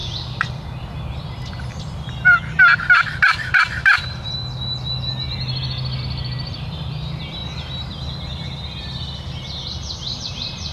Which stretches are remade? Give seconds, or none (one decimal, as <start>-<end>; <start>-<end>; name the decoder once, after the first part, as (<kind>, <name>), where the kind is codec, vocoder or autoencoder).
2.9-4.4 (vocoder, BigVGAN v2); 6.0-7.4; 10.2-10.7